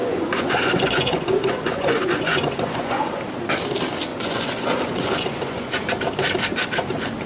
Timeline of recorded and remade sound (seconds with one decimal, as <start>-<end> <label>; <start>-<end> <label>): 0.0-3.2 remade; 3.2-4.1 recorded; 4.1-5.9 remade; 5.9-7.3 recorded